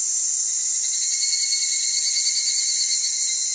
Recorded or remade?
recorded